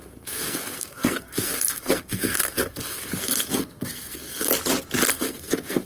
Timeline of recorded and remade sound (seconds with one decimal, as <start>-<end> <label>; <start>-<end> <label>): 0.0-4.5 remade; 4.5-5.1 recorded; 5.1-5.9 remade